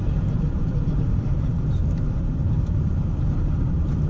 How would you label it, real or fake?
fake